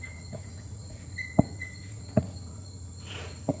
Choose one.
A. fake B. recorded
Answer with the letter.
A